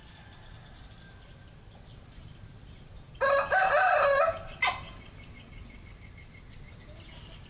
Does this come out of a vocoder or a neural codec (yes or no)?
no